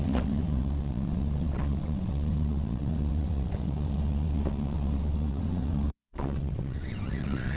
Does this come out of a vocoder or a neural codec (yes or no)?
yes